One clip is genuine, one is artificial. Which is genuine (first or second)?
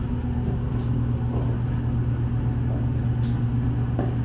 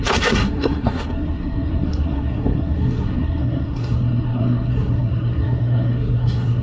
first